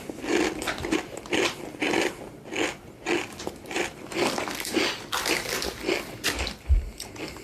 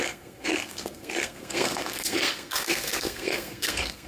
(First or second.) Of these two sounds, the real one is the first